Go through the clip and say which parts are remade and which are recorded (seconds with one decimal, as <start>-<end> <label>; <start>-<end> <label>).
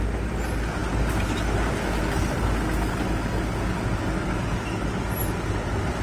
0.0-6.0 recorded